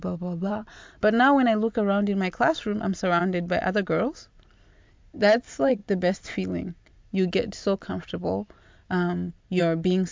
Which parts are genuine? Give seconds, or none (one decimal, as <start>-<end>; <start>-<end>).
0.7-2.6; 3.2-5.2; 5.8-9.6